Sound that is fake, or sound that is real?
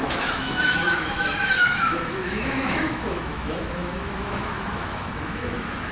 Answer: fake